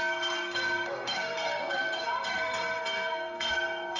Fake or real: fake